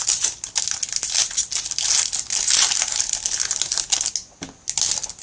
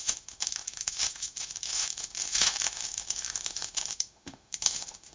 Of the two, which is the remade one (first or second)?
second